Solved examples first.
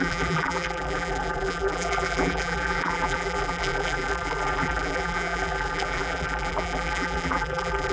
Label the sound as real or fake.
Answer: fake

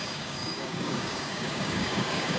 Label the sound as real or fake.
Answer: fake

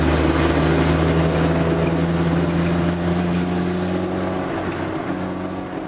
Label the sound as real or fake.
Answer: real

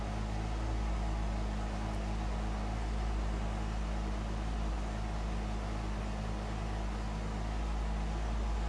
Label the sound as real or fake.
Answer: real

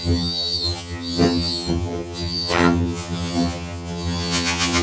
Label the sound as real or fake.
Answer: fake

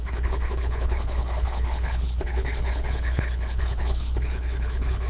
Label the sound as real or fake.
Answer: fake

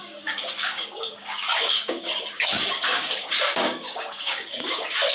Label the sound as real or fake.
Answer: fake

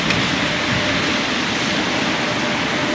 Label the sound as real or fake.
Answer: real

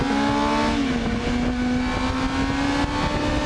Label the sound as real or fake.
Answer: real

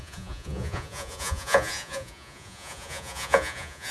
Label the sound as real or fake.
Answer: fake